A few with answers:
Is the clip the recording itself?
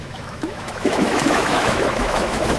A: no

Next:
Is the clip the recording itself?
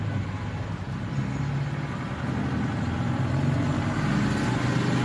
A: yes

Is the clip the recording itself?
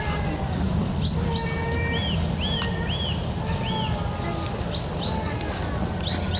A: yes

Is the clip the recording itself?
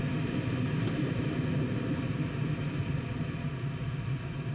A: yes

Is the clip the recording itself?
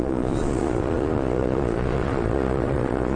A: no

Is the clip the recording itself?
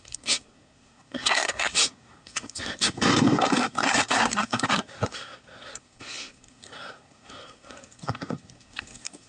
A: no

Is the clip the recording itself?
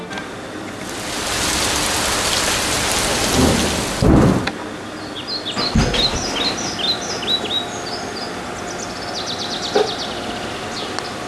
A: yes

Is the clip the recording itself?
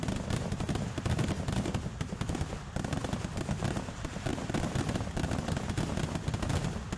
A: yes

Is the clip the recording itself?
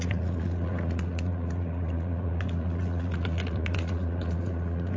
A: no